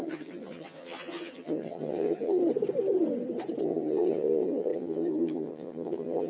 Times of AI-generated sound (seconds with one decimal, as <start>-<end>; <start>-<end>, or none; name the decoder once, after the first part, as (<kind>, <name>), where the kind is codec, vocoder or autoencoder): 0.0-2.4 (vocoder, HiFi-GAN); 3.6-6.3